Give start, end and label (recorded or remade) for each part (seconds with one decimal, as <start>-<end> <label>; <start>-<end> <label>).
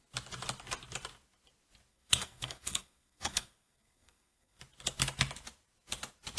0.0-1.9 recorded; 1.9-4.6 remade; 4.6-6.4 recorded